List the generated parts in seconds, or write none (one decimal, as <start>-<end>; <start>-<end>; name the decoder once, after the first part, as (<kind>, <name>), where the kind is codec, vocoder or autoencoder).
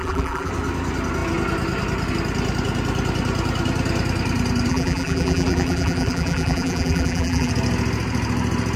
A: 0.0-0.5 (vocoder, BigVGAN v2); 4.7-7.5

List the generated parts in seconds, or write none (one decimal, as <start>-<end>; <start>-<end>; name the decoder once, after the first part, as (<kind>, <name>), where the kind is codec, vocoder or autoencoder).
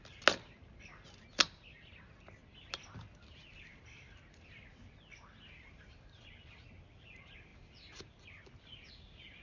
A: 7.5-8.9 (vocoder, BigVGAN v2)